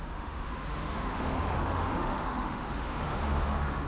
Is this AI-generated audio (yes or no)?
yes